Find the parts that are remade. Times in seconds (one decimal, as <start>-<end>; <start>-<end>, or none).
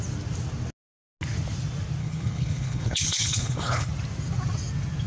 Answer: 2.0-3.9